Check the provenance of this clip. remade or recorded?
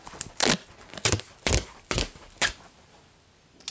recorded